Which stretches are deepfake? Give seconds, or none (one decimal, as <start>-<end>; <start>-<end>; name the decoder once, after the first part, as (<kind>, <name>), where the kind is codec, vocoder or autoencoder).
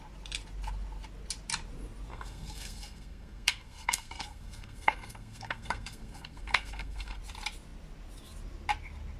2.1-7.2 (codec, SNAC)